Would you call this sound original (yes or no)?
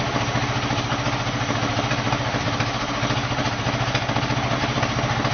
yes